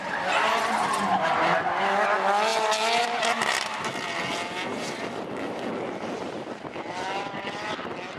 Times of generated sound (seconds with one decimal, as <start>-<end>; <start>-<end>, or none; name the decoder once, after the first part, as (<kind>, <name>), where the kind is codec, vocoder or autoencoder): none